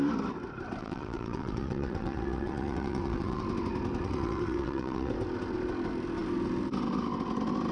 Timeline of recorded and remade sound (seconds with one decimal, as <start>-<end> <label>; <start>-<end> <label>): 0.0-0.8 recorded; 0.8-3.4 remade; 3.4-4.0 recorded; 4.0-5.1 remade; 5.1-7.7 recorded

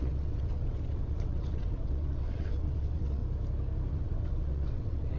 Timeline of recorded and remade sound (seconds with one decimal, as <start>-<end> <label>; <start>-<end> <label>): 0.0-3.2 remade; 3.2-3.9 recorded; 3.9-5.2 remade

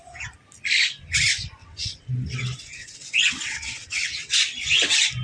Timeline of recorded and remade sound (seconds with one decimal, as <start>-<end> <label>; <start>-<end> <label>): 0.0-1.6 recorded; 1.6-2.1 remade; 2.1-2.8 recorded; 2.8-4.3 remade; 4.3-5.2 recorded

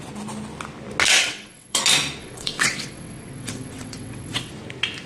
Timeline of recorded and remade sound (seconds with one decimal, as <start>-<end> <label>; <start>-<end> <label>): 0.0-1.2 recorded; 1.2-1.8 remade; 1.8-2.2 recorded; 2.2-4.5 remade; 4.5-5.1 recorded

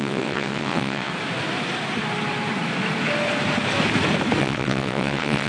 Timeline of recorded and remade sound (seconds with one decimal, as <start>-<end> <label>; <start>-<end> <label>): 0.0-1.1 remade; 1.1-4.4 recorded; 4.4-5.5 remade

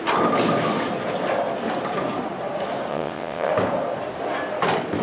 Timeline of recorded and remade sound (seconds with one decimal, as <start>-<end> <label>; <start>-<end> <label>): 0.0-2.9 recorded; 2.9-3.5 remade; 3.5-5.0 recorded